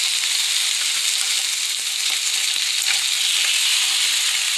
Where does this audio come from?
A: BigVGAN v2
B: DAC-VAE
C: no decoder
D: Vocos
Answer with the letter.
C